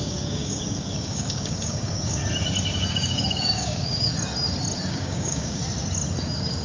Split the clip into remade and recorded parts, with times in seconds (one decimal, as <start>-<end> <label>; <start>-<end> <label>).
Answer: 0.0-2.2 remade; 2.2-2.9 recorded; 2.9-4.1 remade; 4.1-4.9 recorded; 4.9-5.6 remade; 5.6-6.6 recorded